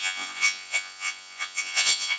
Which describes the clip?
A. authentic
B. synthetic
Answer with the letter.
B